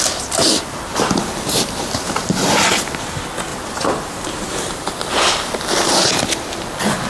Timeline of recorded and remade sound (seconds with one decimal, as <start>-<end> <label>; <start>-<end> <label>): 0.0-3.5 recorded; 3.5-4.9 remade; 4.9-7.1 recorded